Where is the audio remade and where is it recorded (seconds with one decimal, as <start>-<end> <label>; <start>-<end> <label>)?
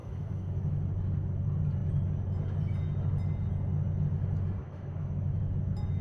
0.0-0.8 remade; 0.8-4.6 recorded; 4.6-5.4 remade; 5.4-6.0 recorded